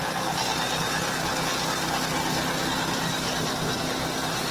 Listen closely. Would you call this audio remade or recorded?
recorded